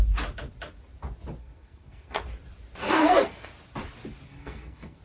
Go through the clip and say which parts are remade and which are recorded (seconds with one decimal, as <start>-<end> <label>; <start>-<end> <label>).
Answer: 0.0-1.4 recorded; 1.4-2.2 remade; 2.2-2.8 recorded; 2.8-3.5 remade; 3.5-4.3 recorded; 4.3-5.0 remade

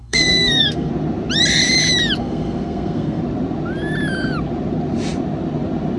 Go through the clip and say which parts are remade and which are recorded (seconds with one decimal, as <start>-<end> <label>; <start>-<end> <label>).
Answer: 0.0-0.9 remade; 0.9-2.2 recorded; 2.2-3.2 remade; 3.2-6.0 recorded